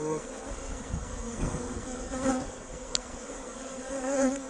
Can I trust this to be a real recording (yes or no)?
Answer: no